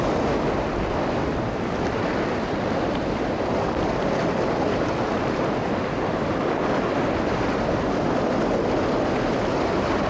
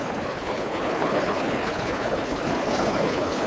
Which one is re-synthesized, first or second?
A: second